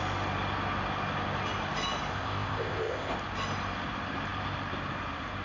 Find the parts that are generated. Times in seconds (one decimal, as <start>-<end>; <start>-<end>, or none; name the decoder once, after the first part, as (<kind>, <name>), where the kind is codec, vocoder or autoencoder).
2.1-3.1 (codec, ZipCodec)